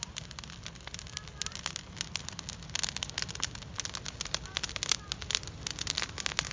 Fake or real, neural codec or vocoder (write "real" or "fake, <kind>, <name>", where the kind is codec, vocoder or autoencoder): real